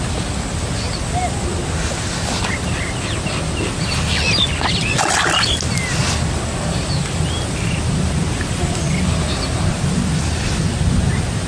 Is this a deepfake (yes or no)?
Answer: no